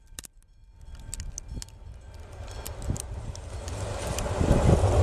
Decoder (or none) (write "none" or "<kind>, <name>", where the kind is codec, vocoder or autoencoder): none